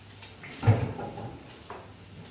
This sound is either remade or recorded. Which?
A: recorded